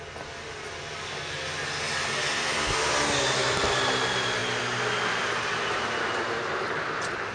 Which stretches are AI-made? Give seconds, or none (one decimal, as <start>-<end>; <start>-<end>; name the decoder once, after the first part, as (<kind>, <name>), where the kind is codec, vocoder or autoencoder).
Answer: none